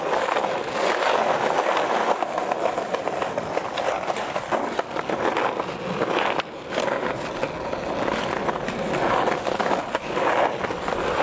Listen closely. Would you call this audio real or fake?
real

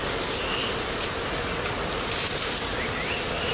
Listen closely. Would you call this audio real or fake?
real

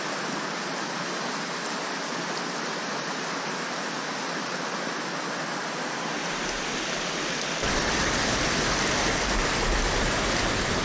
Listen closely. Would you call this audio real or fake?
real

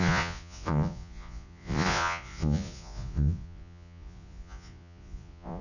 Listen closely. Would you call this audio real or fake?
fake